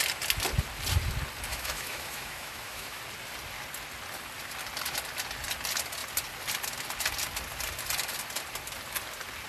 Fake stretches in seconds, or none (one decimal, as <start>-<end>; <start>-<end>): 1.5-3.0